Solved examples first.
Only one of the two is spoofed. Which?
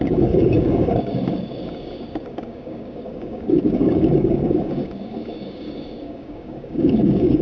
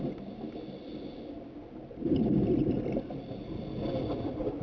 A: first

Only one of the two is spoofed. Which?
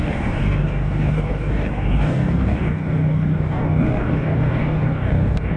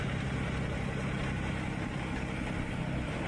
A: first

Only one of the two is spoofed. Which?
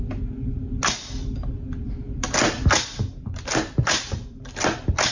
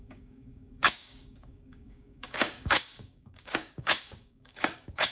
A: second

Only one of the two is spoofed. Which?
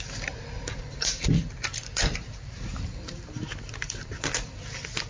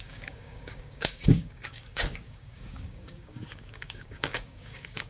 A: second